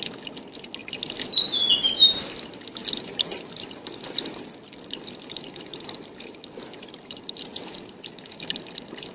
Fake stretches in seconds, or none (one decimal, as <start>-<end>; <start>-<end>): none